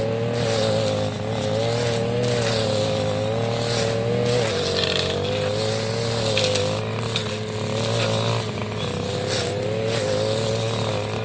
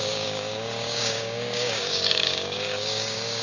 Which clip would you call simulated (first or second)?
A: second